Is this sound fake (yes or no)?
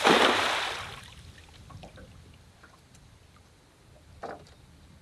yes